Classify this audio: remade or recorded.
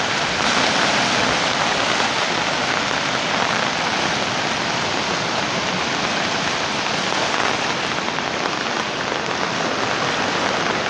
recorded